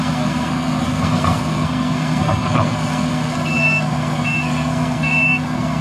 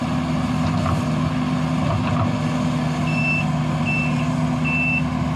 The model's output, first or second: first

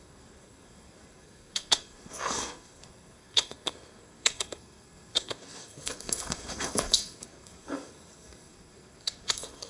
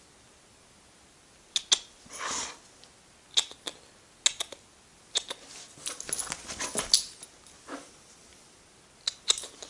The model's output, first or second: first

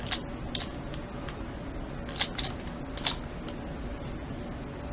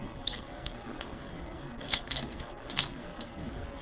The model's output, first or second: second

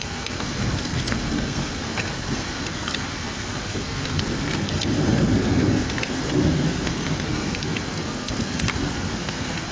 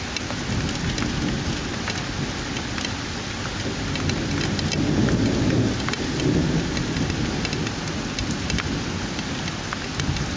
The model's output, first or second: first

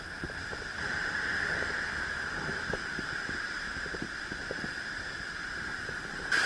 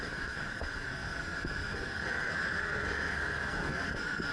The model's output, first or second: second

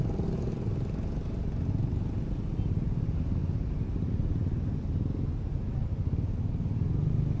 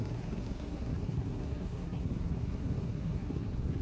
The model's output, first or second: second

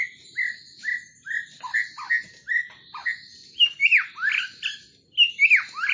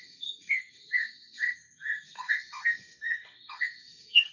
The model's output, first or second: second